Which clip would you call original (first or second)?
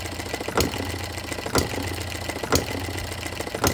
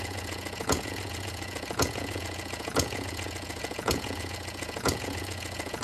first